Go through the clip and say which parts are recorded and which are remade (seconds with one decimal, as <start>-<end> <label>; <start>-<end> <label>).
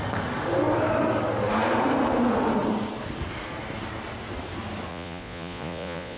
0.0-4.9 recorded; 4.9-6.2 remade